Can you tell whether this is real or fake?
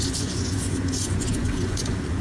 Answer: fake